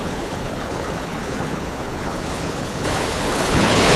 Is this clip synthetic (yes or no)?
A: yes